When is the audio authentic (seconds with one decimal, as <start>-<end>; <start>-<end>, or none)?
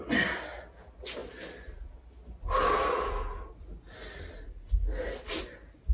0.0-5.9